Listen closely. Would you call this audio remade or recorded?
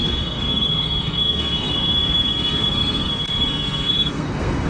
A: remade